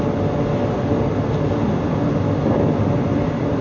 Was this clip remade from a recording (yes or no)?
no